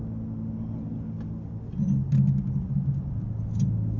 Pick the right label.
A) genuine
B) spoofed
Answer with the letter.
A